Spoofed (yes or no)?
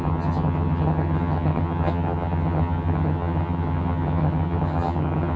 yes